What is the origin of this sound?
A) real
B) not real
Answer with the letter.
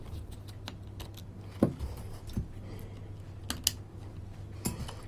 A